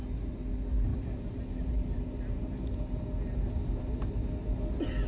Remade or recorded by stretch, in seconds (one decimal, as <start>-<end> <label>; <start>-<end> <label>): 0.0-0.9 recorded; 0.9-4.0 remade; 4.0-5.1 recorded